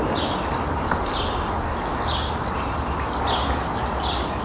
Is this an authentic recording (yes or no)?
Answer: yes